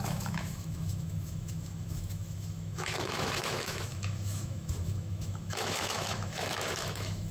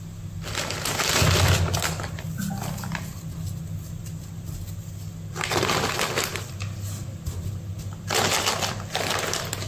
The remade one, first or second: first